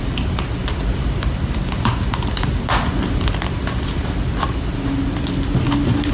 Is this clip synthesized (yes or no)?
no